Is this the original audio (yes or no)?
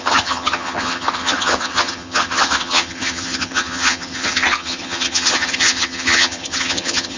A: no